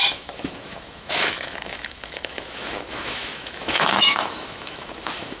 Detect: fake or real fake